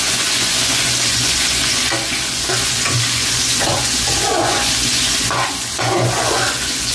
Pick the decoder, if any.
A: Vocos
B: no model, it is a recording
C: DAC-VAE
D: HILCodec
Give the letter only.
A